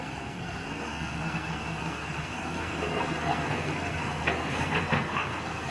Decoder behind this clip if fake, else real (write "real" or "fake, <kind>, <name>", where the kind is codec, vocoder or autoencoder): fake, codec, SNAC